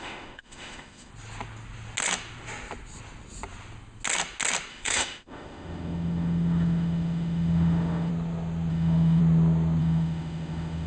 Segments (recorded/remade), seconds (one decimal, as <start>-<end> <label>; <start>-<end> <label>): 0.0-1.1 remade; 1.1-4.7 recorded; 4.7-8.1 remade; 8.1-8.7 recorded; 8.7-9.2 remade; 9.2-9.8 recorded; 9.8-10.9 remade